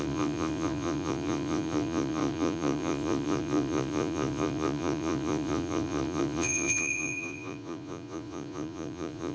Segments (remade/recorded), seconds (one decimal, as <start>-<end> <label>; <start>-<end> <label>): 0.0-9.3 remade